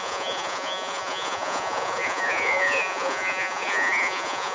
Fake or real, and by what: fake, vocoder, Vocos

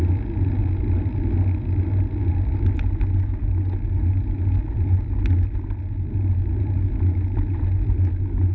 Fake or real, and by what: real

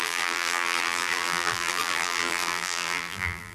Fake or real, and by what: fake, vocoder, BigVGAN v2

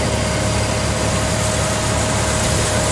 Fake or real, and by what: real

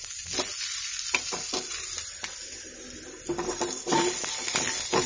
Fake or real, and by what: real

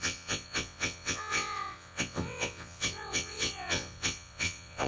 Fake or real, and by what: fake, vocoder, WaveNeXt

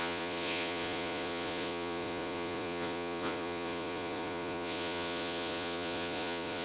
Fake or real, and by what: fake, vocoder, Vocos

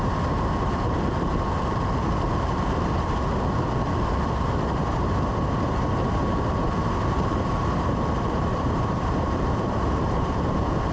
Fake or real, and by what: fake, vocoder, BigVGAN v2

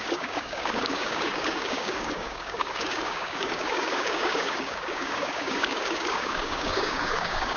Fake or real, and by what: fake, codec, DAC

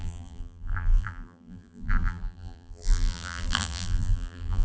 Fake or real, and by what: fake, vocoder, BigVGAN v2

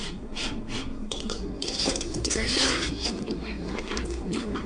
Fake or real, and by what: fake, codec, SNAC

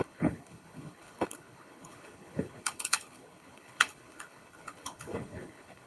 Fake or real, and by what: fake, codec, HILCodec